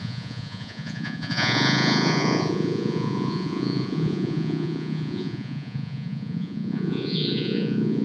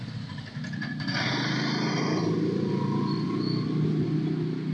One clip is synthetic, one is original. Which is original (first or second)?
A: second